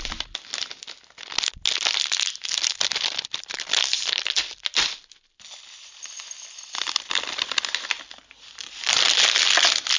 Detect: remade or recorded recorded